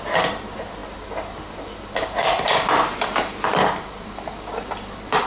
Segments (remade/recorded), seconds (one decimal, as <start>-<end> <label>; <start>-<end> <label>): 0.0-5.3 recorded